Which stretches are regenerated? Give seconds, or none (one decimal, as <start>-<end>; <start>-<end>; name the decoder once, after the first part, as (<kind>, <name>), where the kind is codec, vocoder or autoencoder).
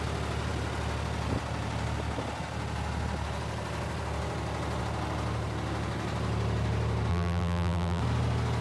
7.1-8.0 (vocoder, BigVGAN v2)